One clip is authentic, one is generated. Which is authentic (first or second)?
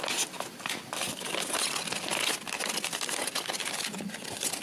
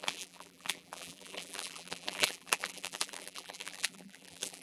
first